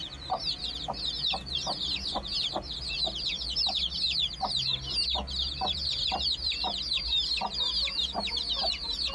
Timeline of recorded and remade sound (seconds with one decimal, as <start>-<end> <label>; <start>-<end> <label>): 0.0-9.1 recorded